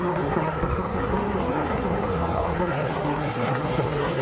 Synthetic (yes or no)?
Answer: yes